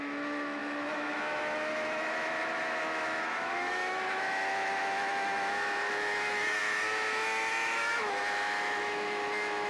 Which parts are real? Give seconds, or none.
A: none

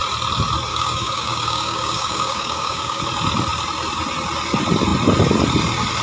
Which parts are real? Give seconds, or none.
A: 0.0-0.7; 3.0-6.0

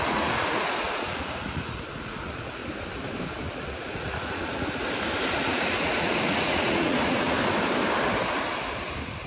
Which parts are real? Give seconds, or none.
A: 2.6-3.6; 4.8-5.3; 7.4-9.3

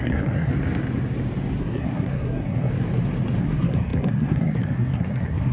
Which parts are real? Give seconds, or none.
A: 0.5-1.6; 2.7-3.4

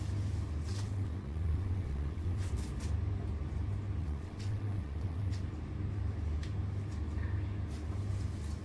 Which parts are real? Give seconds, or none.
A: 0.0-0.7; 2.5-4.0; 5.4-8.6

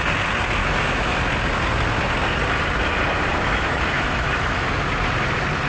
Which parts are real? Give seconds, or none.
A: 0.0-0.6; 1.2-3.3; 4.7-5.7

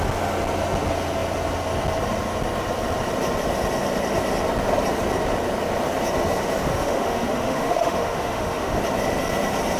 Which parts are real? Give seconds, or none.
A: 0.0-6.7; 8.8-9.8

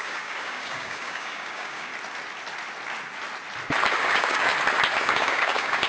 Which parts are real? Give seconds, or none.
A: 1.9-4.0; 4.5-5.0